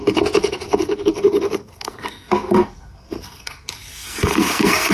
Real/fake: fake